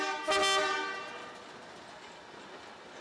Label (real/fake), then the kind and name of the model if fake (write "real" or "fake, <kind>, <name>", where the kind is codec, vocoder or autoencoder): real